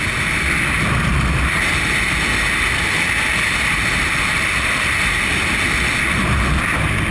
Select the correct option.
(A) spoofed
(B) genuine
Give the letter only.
B